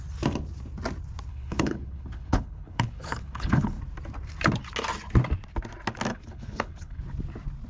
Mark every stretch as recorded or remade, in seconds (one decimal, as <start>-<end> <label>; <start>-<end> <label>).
0.0-1.3 recorded; 1.3-3.8 remade; 3.8-6.1 recorded; 6.1-7.0 remade; 7.0-7.7 recorded